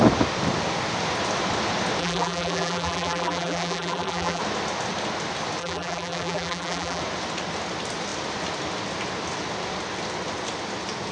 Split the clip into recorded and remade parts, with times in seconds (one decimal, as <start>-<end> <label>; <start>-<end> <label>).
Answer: 0.0-2.0 recorded; 2.0-4.4 remade; 4.4-5.6 recorded; 5.6-7.0 remade; 7.0-11.1 recorded